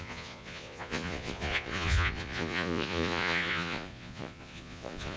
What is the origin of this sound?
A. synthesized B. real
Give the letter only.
A